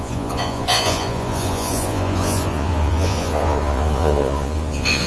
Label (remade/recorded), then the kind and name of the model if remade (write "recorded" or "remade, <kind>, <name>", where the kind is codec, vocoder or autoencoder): remade, vocoder, Vocos